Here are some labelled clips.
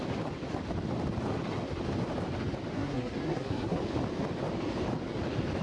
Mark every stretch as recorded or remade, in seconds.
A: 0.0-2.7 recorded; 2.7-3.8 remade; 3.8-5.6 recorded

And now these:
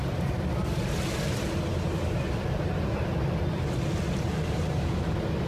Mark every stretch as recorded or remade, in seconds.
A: 0.0-5.5 recorded

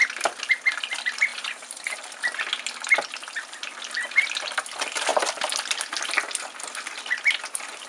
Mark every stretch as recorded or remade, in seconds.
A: 0.0-1.3 recorded; 1.3-2.1 remade; 2.1-7.9 recorded

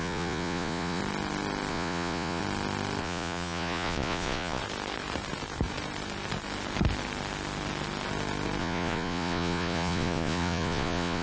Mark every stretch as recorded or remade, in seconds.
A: 0.0-1.0 remade; 1.0-1.7 recorded; 1.7-2.4 remade; 2.4-3.0 recorded; 3.0-4.6 remade; 4.6-8.6 recorded; 8.6-11.2 remade

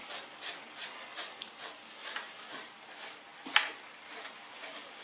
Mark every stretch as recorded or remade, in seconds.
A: 0.0-2.7 remade; 2.7-5.0 recorded